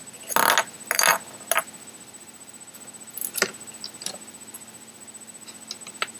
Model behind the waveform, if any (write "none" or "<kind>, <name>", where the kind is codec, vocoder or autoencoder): none